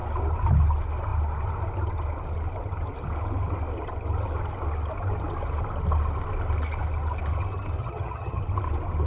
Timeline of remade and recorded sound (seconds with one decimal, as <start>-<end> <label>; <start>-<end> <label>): 0.0-7.8 recorded; 7.8-8.4 remade; 8.4-9.1 recorded